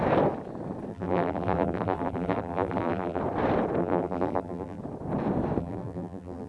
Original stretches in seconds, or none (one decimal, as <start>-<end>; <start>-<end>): 0.0-0.9; 3.2-3.8; 4.8-5.6